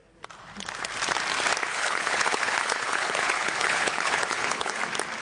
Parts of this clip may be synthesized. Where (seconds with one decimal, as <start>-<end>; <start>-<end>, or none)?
1.7-4.8